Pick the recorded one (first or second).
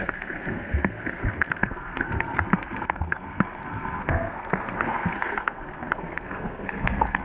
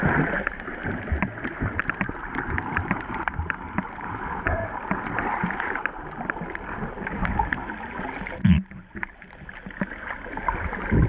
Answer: second